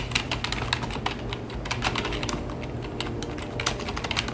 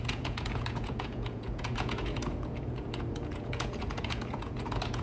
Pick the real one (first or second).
first